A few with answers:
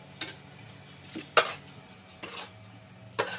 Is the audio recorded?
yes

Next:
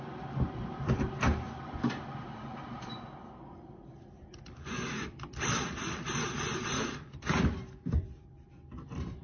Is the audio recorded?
no